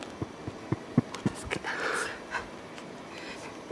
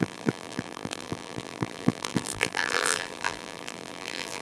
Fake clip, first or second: second